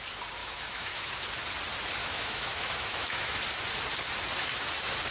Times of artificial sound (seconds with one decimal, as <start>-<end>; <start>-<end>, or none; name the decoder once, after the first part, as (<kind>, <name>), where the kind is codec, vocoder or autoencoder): 0.4-1.1 (autoencoder, DAC-VAE); 2.0-3.4